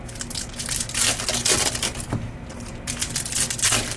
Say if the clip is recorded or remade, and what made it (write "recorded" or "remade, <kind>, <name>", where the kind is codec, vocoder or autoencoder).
recorded